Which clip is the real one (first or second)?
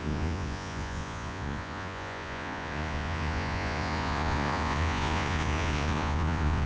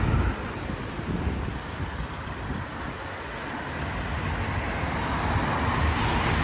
second